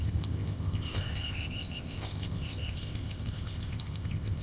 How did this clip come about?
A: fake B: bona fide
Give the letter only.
A